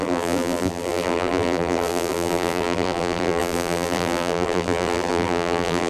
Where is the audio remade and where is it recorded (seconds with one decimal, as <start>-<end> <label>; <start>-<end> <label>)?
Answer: 0.0-5.9 remade